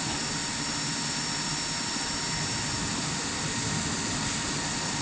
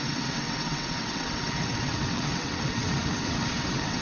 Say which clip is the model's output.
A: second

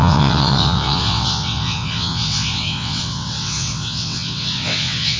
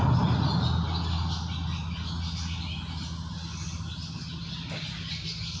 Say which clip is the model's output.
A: first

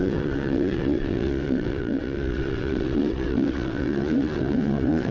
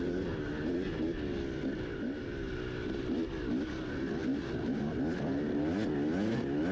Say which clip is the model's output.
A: first